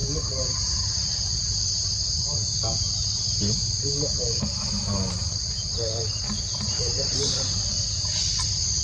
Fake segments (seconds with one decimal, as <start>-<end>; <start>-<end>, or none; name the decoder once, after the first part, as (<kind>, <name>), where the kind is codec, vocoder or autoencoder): none